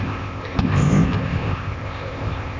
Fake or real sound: fake